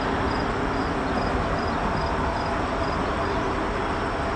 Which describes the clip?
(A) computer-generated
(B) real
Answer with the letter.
B